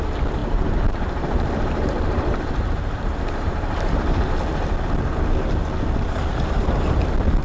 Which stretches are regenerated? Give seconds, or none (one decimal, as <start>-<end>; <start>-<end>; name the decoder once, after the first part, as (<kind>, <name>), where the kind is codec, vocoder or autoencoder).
0.4-4.3 (vocoder, BigVGAN v2); 5.6-7.0